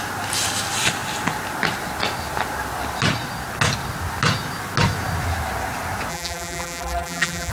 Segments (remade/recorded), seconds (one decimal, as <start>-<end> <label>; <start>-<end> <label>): 0.0-6.1 recorded; 6.1-7.5 remade